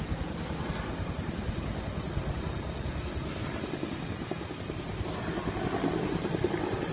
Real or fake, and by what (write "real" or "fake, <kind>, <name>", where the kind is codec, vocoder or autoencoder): real